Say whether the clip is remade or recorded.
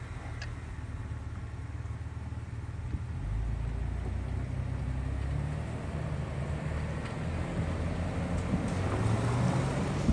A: recorded